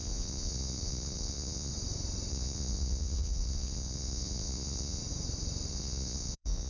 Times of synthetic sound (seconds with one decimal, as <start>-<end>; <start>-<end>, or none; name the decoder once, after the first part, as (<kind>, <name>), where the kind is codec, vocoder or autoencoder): 0.0-1.7 (vocoder, Vocos); 2.3-5.0; 5.7-6.7